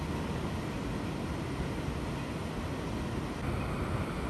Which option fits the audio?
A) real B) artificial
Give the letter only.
A